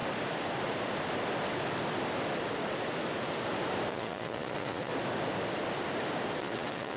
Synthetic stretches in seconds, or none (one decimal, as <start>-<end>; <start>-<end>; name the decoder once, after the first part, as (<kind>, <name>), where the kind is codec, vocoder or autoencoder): 3.9-4.9 (vocoder, Vocos); 6.4-7.0